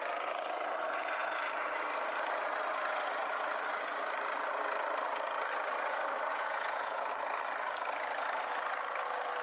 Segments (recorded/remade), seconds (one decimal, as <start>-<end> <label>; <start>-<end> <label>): 0.0-6.3 recorded; 6.3-7.1 remade; 7.1-9.4 recorded